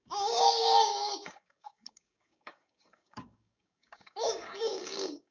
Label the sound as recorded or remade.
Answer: remade